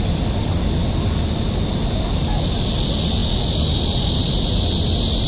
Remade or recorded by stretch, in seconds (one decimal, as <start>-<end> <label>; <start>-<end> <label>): 0.0-5.3 recorded